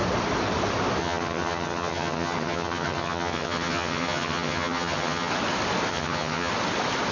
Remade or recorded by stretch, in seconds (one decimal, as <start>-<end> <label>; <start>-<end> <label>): 0.0-1.0 recorded; 1.0-5.3 remade; 5.3-5.9 recorded; 5.9-6.5 remade; 6.5-7.1 recorded